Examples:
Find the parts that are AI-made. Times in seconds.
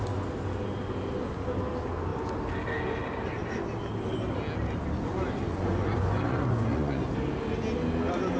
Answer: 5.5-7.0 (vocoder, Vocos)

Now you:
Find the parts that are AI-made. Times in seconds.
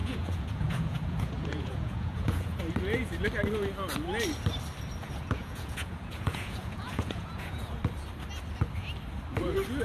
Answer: 0.0-2.6 (vocoder, Vocos); 5.0-7.8